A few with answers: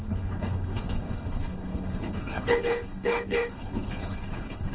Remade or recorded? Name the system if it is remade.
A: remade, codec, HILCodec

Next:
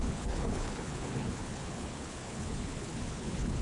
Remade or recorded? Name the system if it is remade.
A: remade, codec, HILCodec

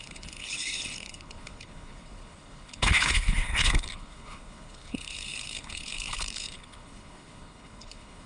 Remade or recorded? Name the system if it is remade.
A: remade, codec, HILCodec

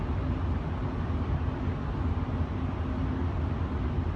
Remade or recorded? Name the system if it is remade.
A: recorded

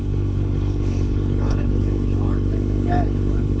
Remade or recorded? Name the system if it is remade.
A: remade, codec, HILCodec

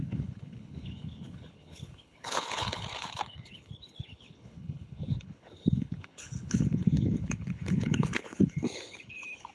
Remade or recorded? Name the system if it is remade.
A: remade, codec, HILCodec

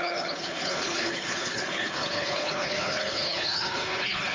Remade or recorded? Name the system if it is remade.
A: remade, codec, HILCodec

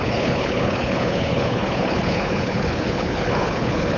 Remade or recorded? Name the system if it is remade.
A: remade, codec, HILCodec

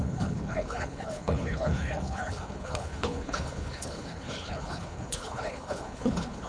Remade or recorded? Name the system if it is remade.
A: remade, codec, HILCodec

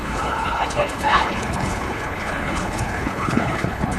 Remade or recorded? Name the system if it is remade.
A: remade, codec, HILCodec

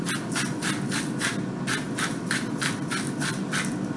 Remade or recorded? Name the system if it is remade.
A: recorded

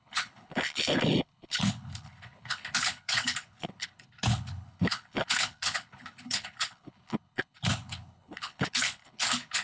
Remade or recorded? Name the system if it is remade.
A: remade, codec, HILCodec